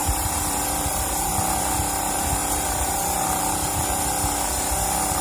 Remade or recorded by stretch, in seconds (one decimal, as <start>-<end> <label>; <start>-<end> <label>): 0.0-1.3 remade; 1.3-2.4 recorded; 2.4-3.4 remade; 3.4-5.2 recorded